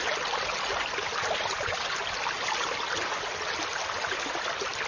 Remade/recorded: recorded